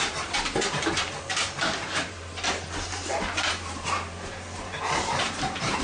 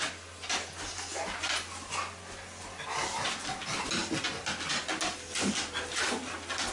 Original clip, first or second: second